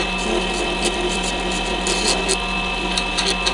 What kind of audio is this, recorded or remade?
recorded